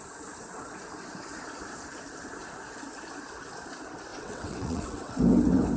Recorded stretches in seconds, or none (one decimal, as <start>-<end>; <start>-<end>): 0.0-4.1; 5.2-5.8

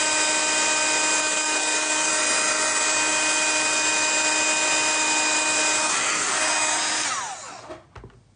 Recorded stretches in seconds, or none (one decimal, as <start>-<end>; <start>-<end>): 0.0-1.2; 2.1-5.8; 6.4-8.4

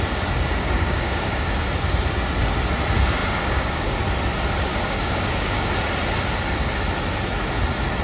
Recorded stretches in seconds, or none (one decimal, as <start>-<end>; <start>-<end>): 0.0-0.6; 1.5-3.2; 4.0-4.7; 5.7-8.0

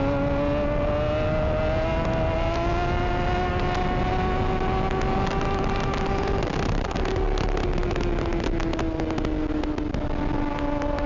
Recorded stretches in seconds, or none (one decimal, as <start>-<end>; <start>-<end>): 0.0-11.1